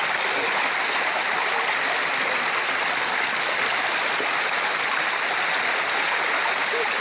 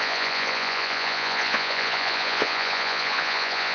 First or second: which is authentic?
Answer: first